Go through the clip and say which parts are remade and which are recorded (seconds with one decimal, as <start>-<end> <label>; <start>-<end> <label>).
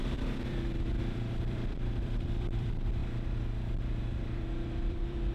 0.0-3.0 remade; 3.0-4.0 recorded; 4.0-5.3 remade